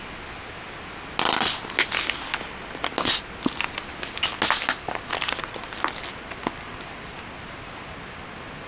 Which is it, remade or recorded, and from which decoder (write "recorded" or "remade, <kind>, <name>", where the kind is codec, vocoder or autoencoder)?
recorded